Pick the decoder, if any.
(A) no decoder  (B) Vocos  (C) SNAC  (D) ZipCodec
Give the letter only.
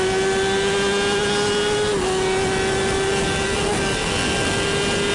A